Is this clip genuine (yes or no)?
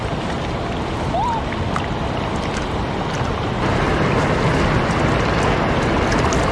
yes